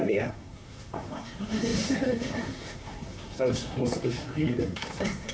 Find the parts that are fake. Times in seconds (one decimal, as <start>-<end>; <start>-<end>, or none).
0.0-5.3